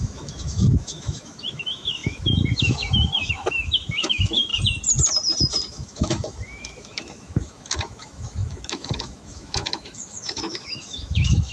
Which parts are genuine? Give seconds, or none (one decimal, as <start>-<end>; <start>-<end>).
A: 4.5-5.7